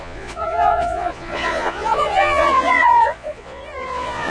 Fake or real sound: fake